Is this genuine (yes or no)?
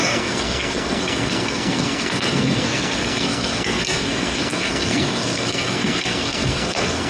no